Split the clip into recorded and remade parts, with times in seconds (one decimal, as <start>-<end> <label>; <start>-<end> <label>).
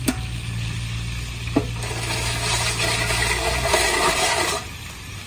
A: 0.0-5.3 recorded